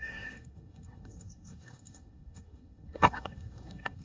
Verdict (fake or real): fake